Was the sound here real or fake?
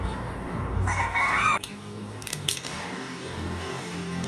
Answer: fake